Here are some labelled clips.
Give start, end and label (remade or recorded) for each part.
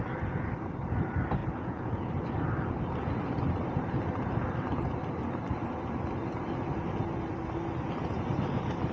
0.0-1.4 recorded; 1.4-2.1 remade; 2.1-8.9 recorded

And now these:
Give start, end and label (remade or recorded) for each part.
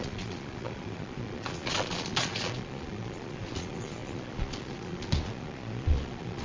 0.0-6.4 remade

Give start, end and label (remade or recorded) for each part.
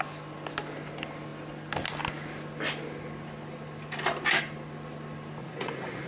0.0-5.4 recorded; 5.4-6.1 remade